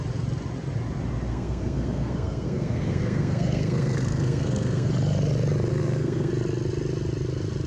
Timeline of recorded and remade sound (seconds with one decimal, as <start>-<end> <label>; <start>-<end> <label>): 0.0-1.3 recorded; 1.3-4.9 remade; 4.9-5.7 recorded; 5.7-6.3 remade; 6.3-7.7 recorded